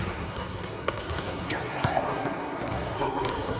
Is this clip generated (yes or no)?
yes